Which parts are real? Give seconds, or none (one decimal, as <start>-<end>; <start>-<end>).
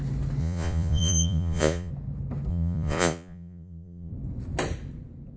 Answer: 0.0-0.4; 1.9-2.5; 4.1-5.4